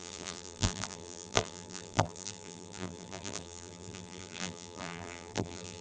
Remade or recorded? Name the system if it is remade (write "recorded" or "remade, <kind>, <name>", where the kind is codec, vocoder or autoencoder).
remade, vocoder, BigVGAN v2